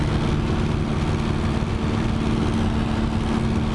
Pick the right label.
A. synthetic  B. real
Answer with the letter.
B